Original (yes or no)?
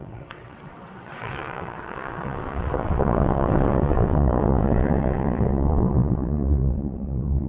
no